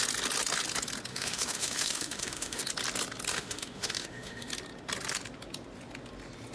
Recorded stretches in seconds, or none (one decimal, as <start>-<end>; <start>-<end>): 0.0-1.1; 2.6-3.3; 4.5-6.5